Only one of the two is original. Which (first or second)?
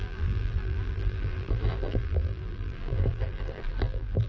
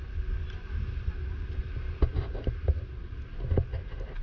second